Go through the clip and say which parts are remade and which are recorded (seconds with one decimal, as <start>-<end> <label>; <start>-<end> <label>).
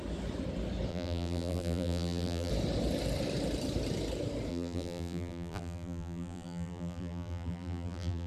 0.0-0.9 recorded; 0.9-2.5 remade; 2.5-4.5 recorded; 4.5-8.3 remade